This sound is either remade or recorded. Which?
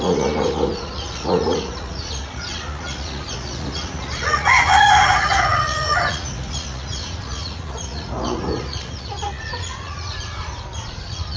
remade